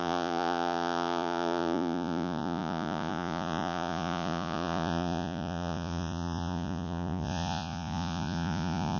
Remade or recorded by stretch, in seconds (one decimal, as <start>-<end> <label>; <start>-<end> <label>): 0.0-9.0 remade